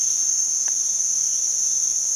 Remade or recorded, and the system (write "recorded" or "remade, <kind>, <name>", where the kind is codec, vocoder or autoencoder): remade, autoencoder, DAC-VAE